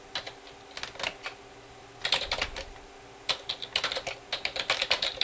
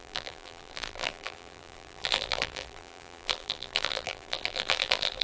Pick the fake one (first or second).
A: second